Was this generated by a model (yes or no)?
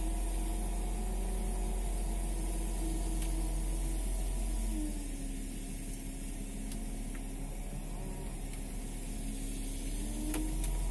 no